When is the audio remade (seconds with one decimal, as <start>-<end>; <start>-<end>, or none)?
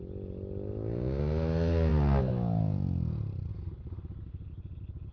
none